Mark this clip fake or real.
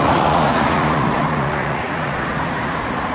fake